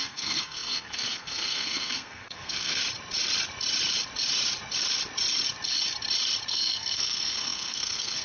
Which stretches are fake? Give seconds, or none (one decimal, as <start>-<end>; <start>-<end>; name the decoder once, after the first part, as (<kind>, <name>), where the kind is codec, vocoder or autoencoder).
0.0-2.8 (codec, SNAC); 6.5-8.2